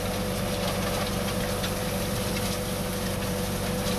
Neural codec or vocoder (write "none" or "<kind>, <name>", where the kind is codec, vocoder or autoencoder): none